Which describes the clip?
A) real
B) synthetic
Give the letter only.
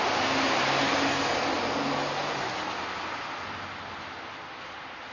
A